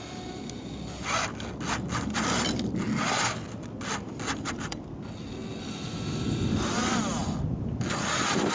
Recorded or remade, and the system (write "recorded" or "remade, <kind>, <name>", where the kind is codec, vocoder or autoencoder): recorded